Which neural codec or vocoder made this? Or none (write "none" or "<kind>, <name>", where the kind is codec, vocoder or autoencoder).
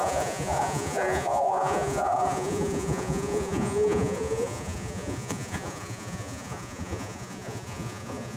vocoder, Vocos